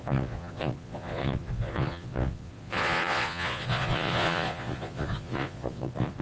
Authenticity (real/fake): fake